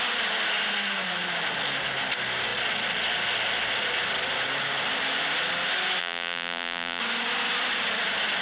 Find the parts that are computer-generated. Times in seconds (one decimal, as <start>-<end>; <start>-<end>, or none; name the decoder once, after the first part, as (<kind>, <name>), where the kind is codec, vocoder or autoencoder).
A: 6.0-7.0 (vocoder, BigVGAN v2)